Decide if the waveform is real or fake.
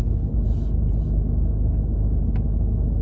real